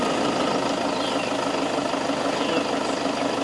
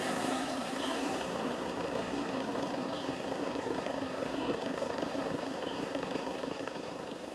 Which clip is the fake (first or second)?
second